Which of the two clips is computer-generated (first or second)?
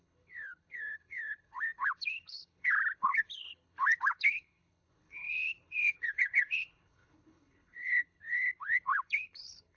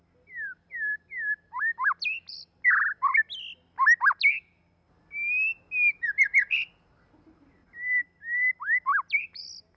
first